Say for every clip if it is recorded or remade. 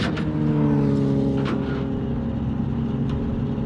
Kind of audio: recorded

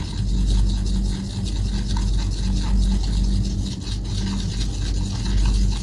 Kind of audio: recorded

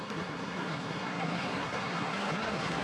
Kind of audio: remade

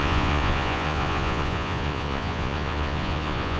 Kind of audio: remade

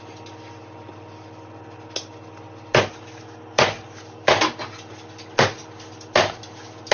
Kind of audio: recorded